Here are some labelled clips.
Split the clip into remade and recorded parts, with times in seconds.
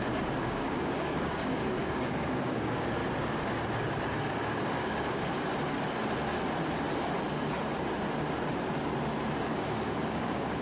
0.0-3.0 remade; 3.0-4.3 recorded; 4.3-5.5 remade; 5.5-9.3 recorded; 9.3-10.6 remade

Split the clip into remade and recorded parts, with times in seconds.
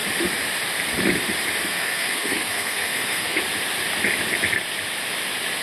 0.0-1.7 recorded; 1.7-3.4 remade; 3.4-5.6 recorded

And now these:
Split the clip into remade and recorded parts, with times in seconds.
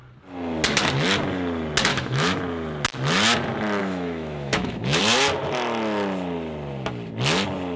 0.0-1.9 recorded; 1.9-2.4 remade; 2.4-3.8 recorded; 3.8-5.0 remade; 5.0-7.8 recorded